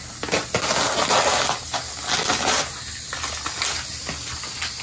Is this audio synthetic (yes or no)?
no